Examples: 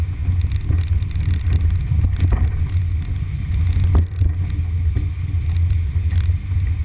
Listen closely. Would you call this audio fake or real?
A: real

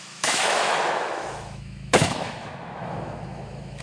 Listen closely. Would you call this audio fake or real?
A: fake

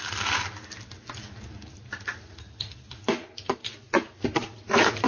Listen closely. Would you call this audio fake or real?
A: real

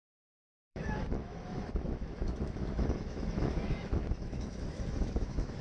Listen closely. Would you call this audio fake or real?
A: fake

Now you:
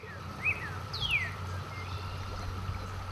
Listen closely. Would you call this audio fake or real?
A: real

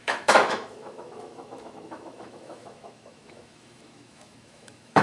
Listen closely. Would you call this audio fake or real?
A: fake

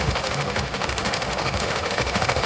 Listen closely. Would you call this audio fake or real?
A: fake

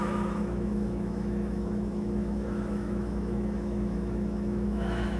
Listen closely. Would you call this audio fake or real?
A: fake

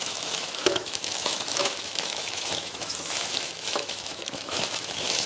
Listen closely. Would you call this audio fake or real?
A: fake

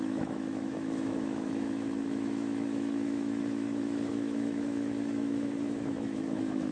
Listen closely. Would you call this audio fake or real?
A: fake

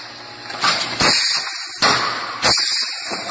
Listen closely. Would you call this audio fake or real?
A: real